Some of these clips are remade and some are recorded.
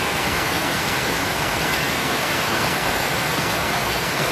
remade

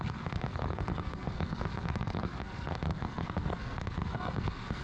remade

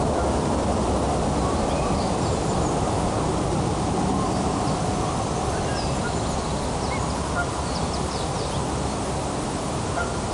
recorded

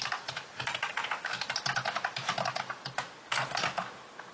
recorded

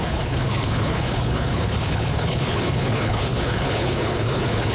remade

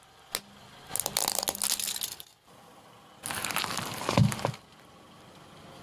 recorded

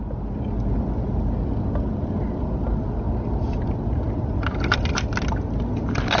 recorded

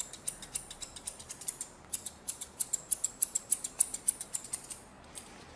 remade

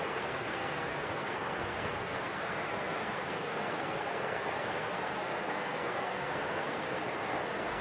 remade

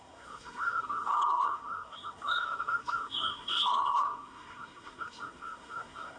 remade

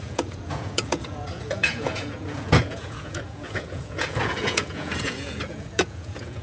remade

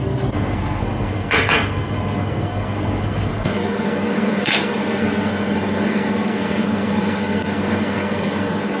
remade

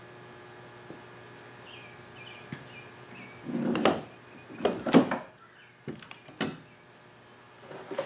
recorded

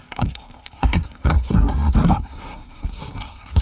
remade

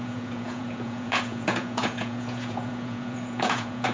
remade